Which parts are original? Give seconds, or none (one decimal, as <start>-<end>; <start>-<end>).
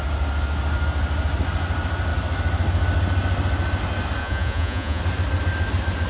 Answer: 0.0-4.2; 5.0-6.1